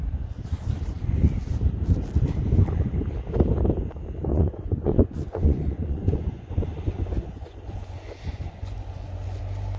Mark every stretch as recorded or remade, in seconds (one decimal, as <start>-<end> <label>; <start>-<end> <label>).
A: 0.0-4.3 recorded; 4.3-9.4 remade; 9.4-9.8 recorded